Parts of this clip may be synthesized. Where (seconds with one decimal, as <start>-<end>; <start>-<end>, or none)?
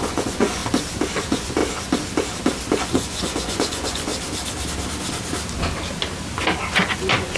0.0-0.6; 1.2-1.6; 2.8-4.1; 6.7-7.4